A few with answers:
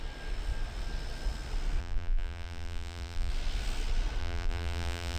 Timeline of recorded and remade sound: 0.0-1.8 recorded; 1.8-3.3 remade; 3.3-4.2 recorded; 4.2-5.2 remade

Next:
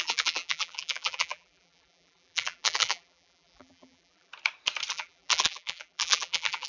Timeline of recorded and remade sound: 0.0-4.3 remade; 4.3-4.9 recorded; 4.9-6.7 remade